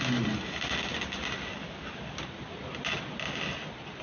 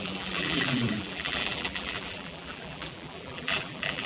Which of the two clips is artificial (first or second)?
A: second